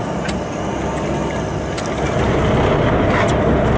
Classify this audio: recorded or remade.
recorded